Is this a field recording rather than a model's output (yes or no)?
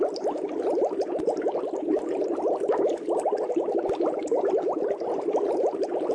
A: yes